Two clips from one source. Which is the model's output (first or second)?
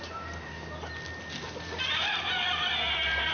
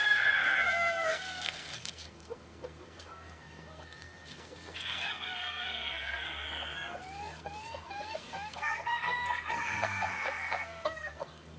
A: second